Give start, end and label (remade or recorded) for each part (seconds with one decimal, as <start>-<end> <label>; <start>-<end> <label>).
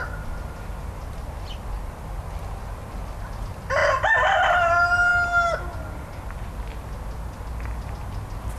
0.0-8.6 recorded